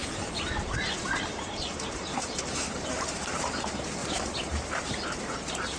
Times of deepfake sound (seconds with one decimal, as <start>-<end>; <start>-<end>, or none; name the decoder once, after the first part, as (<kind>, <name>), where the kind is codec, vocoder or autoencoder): 0.0-3.5 (vocoder, BigVGAN v2); 4.0-5.2